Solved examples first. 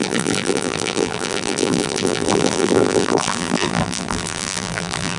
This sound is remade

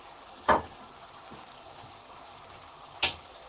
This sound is remade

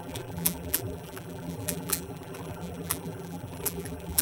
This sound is remade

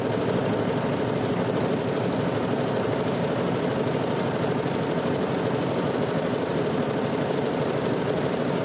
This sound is recorded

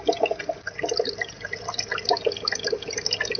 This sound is recorded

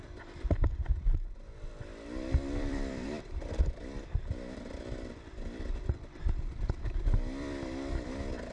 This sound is remade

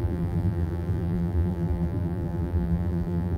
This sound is remade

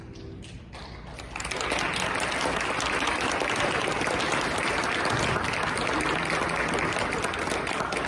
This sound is recorded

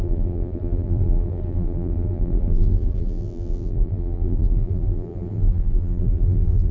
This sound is remade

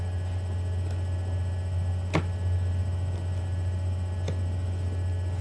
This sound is recorded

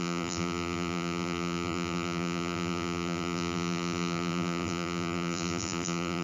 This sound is remade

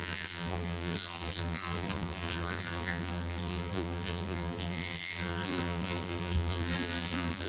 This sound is remade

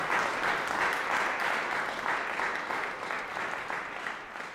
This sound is remade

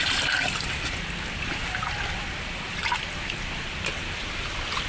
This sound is remade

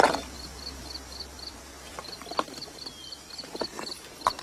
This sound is recorded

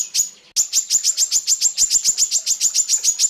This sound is recorded